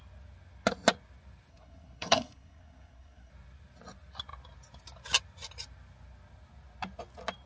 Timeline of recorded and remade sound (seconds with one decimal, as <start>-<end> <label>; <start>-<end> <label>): 0.0-1.5 recorded; 1.5-3.3 remade; 3.3-7.5 recorded